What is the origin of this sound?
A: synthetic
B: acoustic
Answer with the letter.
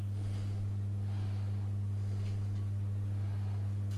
B